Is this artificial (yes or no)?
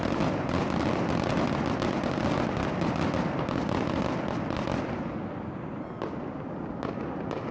no